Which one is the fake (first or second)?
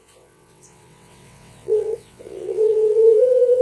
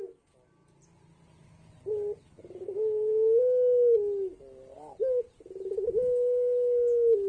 first